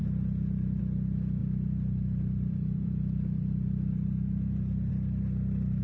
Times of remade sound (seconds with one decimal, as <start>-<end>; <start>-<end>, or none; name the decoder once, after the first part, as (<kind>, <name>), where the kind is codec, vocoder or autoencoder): 0.0-0.8 (vocoder, BigVGAN v2); 1.4-4.9